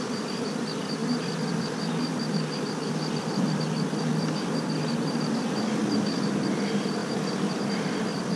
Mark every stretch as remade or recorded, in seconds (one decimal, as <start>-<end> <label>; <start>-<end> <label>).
0.0-7.0 recorded; 7.0-7.5 remade; 7.5-8.4 recorded